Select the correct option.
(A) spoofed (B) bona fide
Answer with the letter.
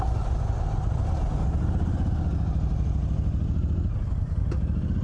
B